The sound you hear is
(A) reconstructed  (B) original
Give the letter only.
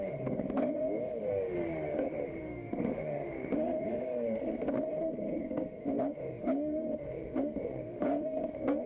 A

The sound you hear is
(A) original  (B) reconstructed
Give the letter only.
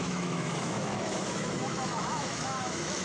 B